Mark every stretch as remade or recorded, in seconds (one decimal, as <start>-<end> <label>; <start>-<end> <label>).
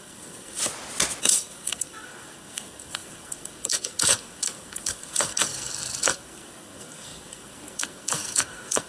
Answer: 0.0-0.6 remade; 0.6-1.2 recorded; 1.2-8.9 remade